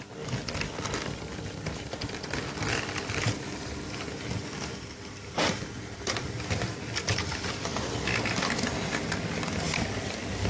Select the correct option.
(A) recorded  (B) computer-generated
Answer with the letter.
A